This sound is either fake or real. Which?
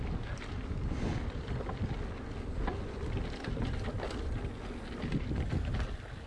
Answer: real